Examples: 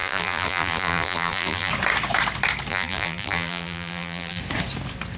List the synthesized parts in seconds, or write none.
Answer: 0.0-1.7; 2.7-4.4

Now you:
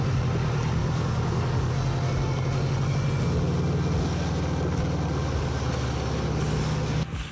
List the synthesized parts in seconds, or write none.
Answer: 0.8-1.7

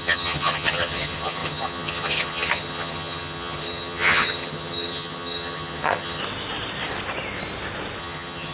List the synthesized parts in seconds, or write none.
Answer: 0.0-6.2; 8.0-8.5

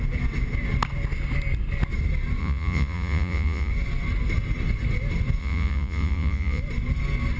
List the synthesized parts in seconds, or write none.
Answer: 2.4-3.7; 5.4-6.6

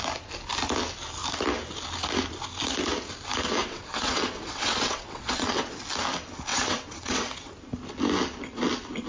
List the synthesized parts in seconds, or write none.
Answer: 3.6-5.8; 6.5-7.5